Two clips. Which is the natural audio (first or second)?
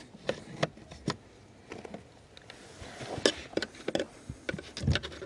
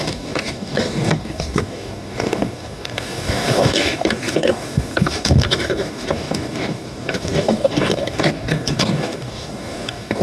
first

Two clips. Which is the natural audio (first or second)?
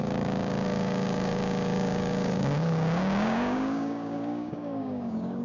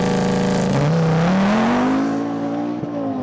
second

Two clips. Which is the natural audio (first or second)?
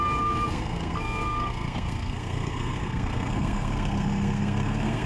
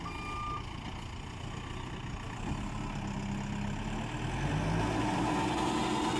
second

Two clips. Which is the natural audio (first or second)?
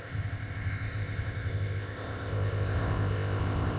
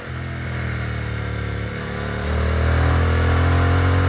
second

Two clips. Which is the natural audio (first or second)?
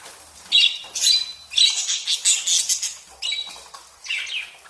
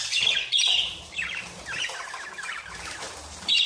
first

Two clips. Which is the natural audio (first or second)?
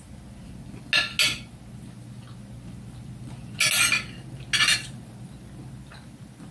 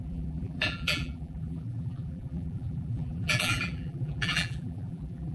first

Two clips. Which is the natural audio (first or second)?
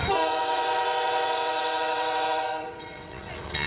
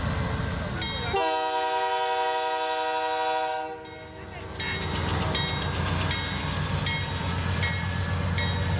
second